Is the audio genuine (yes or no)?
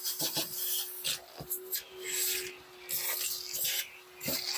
yes